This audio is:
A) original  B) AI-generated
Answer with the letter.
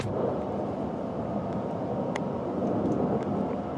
A